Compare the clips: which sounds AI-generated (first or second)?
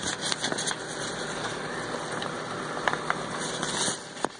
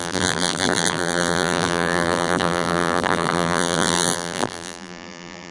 second